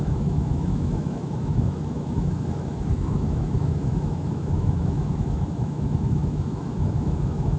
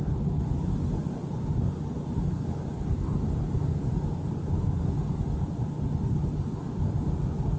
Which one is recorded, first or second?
second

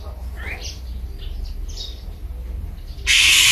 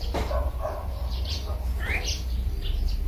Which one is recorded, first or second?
first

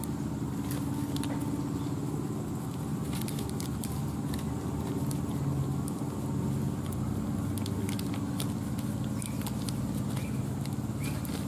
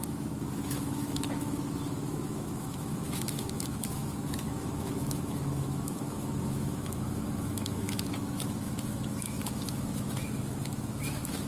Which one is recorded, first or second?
first